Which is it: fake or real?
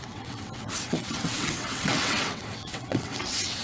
fake